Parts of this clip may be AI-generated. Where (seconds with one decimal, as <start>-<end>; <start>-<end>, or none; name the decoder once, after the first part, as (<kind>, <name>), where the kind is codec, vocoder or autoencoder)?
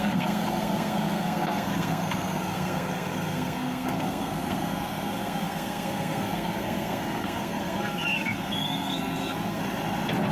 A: 0.0-9.6 (codec, SNAC)